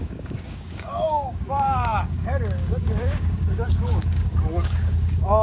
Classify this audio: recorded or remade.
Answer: remade